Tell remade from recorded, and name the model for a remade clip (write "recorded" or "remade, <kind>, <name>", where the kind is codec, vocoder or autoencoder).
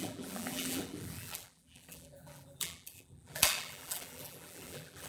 remade, vocoder, BigVGAN v2